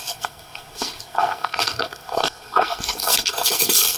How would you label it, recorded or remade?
remade